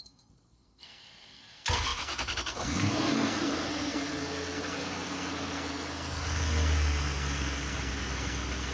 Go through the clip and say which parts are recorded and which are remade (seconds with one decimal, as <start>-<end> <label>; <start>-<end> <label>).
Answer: 0.0-8.7 remade